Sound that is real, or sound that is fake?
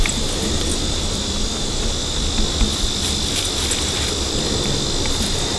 fake